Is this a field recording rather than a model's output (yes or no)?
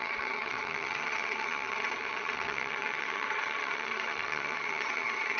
no